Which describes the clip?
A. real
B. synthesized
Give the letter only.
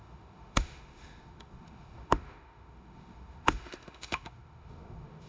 B